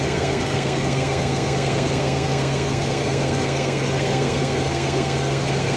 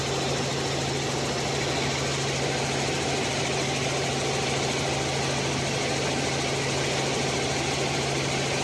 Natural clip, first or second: second